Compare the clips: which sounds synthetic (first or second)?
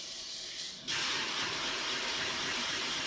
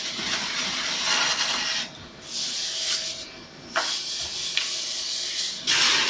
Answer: first